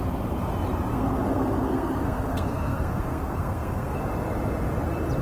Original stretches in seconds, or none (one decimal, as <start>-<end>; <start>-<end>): 0.0-0.9; 4.0-5.2

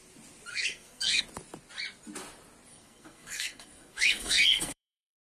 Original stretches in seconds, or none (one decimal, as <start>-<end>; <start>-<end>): 0.0-0.5; 1.2-2.7